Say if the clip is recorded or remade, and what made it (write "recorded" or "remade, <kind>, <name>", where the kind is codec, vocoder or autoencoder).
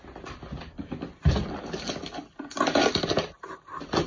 recorded